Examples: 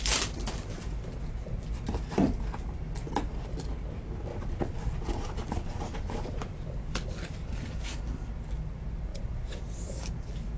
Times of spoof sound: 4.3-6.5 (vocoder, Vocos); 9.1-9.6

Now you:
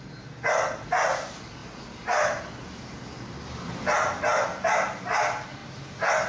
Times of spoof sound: none